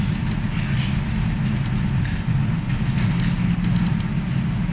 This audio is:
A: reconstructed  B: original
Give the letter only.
B